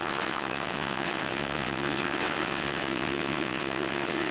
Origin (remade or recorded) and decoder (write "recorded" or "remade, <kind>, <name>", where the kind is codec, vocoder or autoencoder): remade, vocoder, WaveNeXt